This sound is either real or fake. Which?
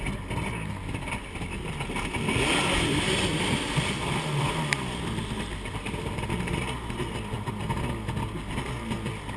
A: real